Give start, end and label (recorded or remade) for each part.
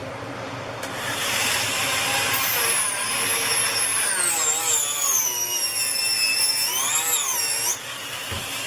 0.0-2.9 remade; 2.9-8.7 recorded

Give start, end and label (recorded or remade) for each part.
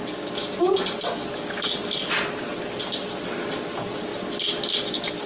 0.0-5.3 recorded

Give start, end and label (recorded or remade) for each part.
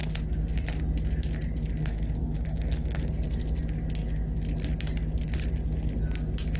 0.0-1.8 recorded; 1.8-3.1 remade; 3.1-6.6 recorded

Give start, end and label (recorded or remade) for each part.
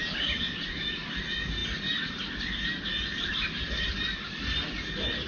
0.0-0.8 remade; 0.8-5.3 recorded